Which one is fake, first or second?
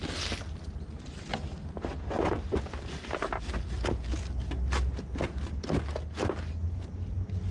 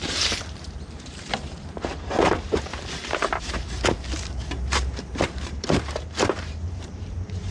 second